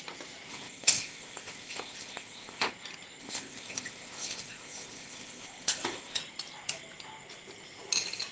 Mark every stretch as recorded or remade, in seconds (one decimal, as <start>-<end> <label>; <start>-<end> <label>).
0.0-0.5 recorded; 0.5-2.7 remade; 2.7-3.2 recorded; 3.2-6.2 remade; 6.2-8.3 recorded